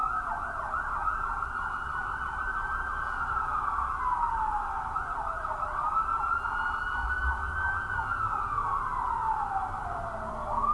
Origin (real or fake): real